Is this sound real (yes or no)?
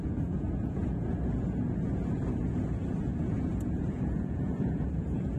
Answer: no